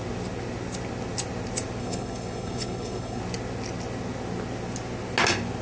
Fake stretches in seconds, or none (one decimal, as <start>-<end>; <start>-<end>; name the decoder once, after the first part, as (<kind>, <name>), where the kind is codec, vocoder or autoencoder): 1.8-3.2 (codec, HILCodec)